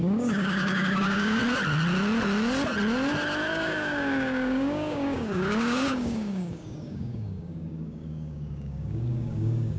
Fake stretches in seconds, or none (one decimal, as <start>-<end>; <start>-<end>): 0.0-1.4; 3.5-9.8